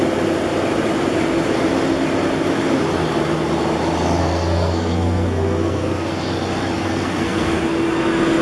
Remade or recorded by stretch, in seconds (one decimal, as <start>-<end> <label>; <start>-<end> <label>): 0.0-4.2 recorded; 4.2-6.3 remade; 6.3-6.8 recorded; 6.8-7.6 remade; 7.6-8.4 recorded